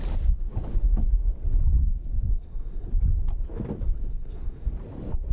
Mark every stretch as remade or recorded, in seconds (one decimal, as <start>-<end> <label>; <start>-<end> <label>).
0.0-2.3 recorded; 2.3-2.9 remade; 2.9-4.1 recorded; 4.1-4.7 remade; 4.7-5.3 recorded